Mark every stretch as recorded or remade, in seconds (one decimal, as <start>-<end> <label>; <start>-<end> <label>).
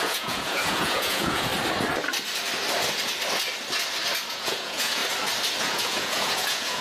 0.0-1.5 remade; 1.5-4.3 recorded; 4.3-5.0 remade; 5.0-5.6 recorded; 5.6-6.8 remade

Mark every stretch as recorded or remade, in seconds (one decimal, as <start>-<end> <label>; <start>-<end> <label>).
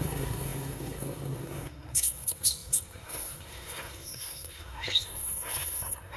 0.0-6.2 remade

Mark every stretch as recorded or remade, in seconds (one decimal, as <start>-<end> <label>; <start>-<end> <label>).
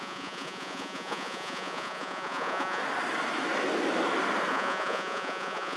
0.0-2.8 remade; 2.8-4.5 recorded; 4.5-5.8 remade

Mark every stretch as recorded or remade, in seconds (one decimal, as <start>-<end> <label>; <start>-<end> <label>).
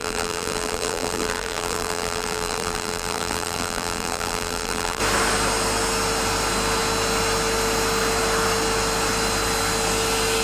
0.0-5.0 remade; 5.0-10.4 recorded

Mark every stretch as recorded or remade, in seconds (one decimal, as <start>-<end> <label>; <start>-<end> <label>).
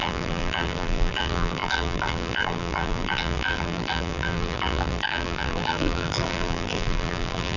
0.0-7.6 remade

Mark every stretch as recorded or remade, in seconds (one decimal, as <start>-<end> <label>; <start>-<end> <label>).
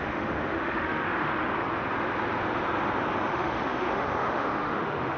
0.0-1.5 remade; 1.5-3.3 recorded; 3.3-5.2 remade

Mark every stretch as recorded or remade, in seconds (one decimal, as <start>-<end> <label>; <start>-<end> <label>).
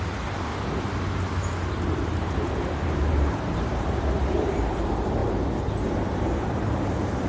0.0-0.5 remade; 0.5-1.7 recorded; 1.7-5.2 remade; 5.2-5.9 recorded; 5.9-7.3 remade